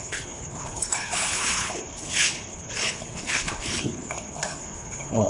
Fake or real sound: fake